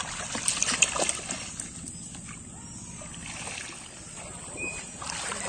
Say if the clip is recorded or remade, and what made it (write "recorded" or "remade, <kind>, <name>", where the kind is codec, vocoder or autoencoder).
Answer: recorded